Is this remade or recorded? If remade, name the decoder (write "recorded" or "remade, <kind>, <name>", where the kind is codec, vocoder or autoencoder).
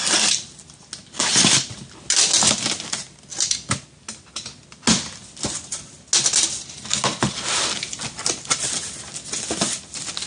recorded